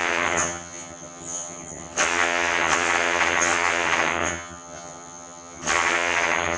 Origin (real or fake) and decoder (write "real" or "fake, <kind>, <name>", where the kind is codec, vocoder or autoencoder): fake, vocoder, HiFi-GAN